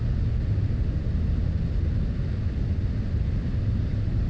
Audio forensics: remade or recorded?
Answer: recorded